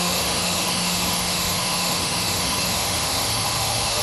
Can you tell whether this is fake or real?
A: fake